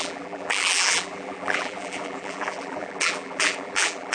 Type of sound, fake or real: fake